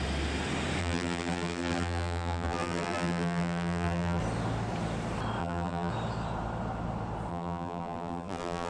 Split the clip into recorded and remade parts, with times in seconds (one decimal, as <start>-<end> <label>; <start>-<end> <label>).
0.0-0.8 recorded; 0.8-4.2 remade; 4.2-5.4 recorded; 5.4-5.9 remade; 5.9-7.3 recorded; 7.3-8.7 remade